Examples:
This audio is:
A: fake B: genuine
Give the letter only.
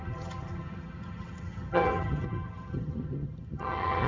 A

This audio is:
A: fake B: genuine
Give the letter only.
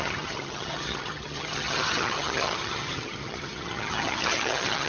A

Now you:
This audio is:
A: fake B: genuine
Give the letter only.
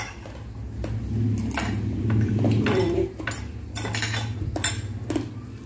B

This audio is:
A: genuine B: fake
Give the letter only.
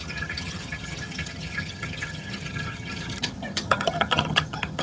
B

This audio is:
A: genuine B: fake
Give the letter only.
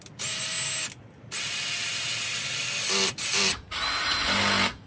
A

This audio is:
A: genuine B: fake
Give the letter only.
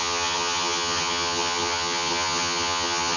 B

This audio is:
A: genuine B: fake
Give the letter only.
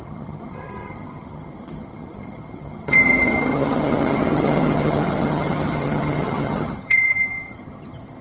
B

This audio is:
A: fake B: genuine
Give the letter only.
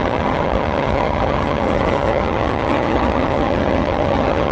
A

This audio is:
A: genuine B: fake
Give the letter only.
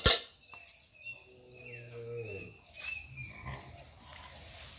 A